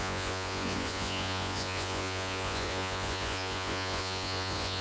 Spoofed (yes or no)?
yes